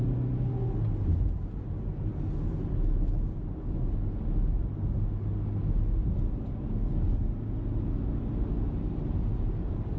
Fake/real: real